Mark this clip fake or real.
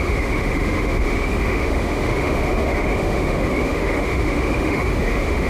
fake